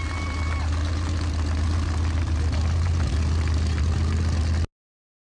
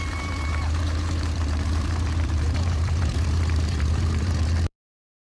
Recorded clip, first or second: first